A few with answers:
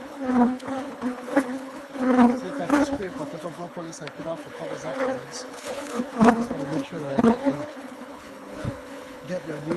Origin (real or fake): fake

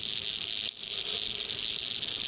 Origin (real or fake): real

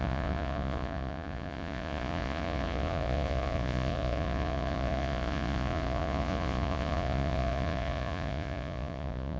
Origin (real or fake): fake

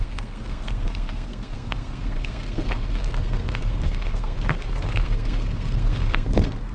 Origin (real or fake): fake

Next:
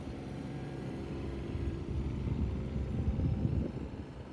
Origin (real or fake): fake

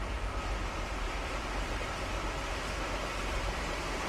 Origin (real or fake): fake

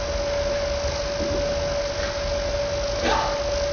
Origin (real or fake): real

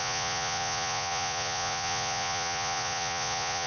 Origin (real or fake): fake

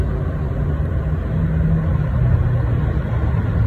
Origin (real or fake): real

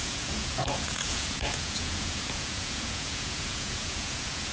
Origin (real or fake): fake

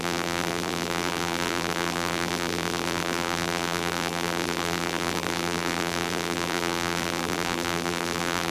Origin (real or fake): fake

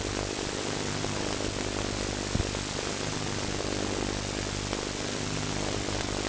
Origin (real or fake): real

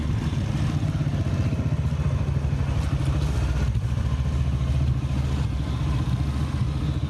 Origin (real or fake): real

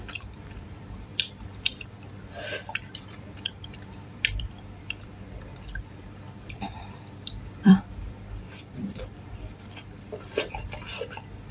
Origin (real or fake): fake